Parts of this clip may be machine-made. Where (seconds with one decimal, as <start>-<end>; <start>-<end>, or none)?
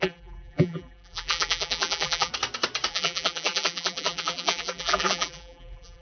0.0-2.3; 2.9-6.0